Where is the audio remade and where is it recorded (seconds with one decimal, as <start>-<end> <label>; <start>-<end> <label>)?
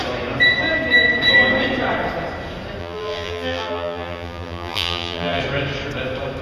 0.0-2.8 recorded; 2.8-5.4 remade; 5.4-6.4 recorded